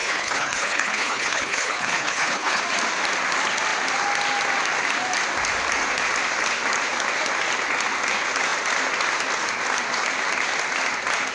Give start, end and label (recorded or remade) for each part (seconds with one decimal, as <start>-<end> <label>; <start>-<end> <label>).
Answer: 0.0-2.6 remade; 2.6-11.3 recorded